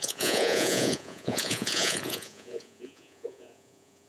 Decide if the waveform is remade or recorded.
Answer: remade